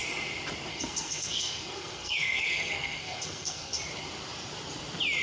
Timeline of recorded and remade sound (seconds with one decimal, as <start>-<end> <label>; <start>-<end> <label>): 0.0-0.7 recorded; 0.7-3.8 remade; 3.8-5.2 recorded